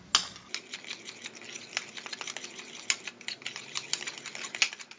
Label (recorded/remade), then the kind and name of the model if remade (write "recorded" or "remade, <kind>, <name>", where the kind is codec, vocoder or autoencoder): recorded